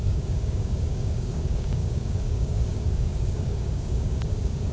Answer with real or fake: fake